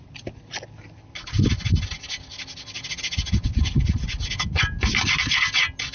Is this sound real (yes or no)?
yes